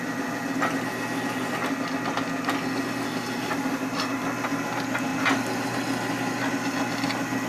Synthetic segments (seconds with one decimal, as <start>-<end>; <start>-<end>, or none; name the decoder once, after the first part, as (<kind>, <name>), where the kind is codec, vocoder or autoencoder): none